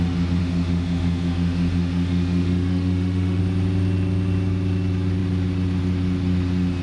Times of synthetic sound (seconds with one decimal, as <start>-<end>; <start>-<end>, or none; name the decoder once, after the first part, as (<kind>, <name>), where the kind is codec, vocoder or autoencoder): 0.4-3.4 (autoencoder, DAC-VAE)